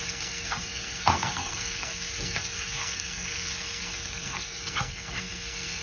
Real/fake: fake